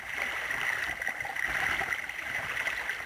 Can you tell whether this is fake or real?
real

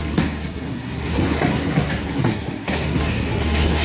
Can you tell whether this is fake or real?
fake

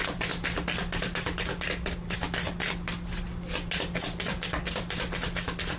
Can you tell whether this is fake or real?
real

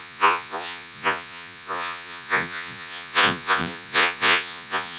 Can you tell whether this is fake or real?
fake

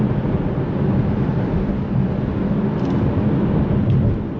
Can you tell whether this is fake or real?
real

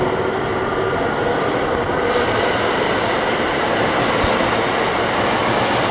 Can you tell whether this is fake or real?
real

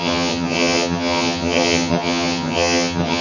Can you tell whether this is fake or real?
fake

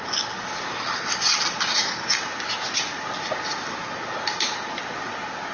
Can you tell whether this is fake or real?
real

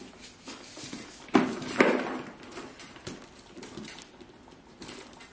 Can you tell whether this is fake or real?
real